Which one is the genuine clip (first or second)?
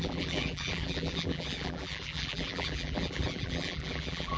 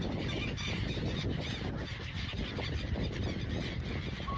second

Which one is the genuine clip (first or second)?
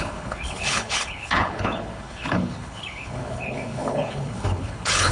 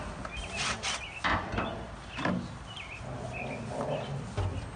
second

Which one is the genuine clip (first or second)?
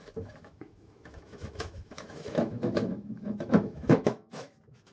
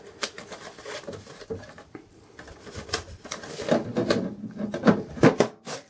second